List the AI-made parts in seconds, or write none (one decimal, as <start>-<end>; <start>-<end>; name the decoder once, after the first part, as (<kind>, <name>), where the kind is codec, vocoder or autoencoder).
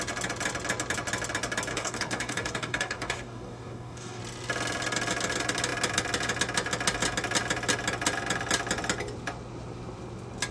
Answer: 1.7-4.2 (codec, DAC)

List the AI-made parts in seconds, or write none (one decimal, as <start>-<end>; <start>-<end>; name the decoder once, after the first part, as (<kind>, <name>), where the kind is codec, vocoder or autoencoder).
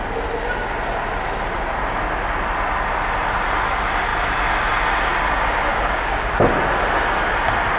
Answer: 5.7-6.3 (codec, DAC)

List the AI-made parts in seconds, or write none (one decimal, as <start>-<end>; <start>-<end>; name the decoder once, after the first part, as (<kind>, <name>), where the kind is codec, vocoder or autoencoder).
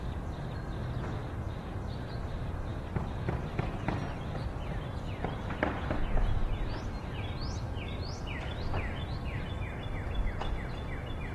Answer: none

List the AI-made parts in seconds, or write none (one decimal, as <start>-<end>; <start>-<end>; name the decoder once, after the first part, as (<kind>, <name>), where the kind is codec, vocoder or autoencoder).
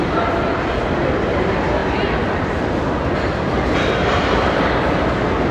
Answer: none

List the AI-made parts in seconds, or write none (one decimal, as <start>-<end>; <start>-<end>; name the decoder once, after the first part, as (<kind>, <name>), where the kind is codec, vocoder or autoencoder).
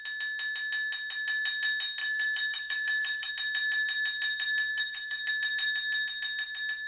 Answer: 2.0-3.3 (codec, DAC); 4.7-5.3